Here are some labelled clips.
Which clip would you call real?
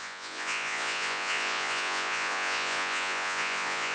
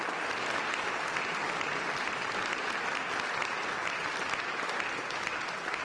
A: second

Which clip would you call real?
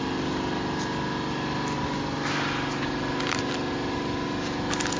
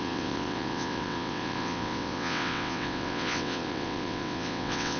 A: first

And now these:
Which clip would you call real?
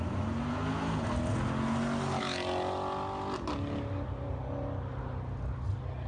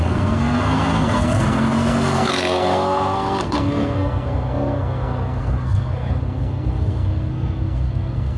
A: first